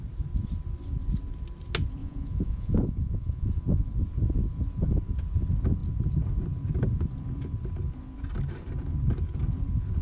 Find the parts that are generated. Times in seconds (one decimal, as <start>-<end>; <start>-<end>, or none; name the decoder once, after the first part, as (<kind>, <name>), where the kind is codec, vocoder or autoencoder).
2.0-3.6 (vocoder, Vocos)